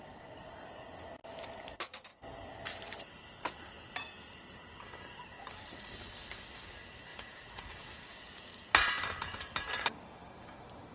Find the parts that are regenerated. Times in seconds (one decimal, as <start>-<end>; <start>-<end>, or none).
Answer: 7.1-8.3